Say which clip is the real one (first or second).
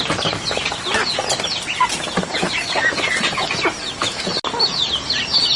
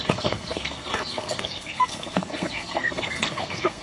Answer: first